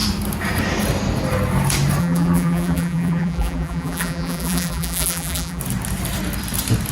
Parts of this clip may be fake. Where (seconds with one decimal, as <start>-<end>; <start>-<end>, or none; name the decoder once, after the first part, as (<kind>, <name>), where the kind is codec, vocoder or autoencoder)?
2.0-5.6 (vocoder, BigVGAN v2)